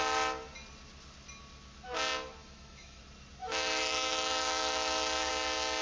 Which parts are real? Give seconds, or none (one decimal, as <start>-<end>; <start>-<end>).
0.0-2.4; 3.0-3.4; 5.3-5.8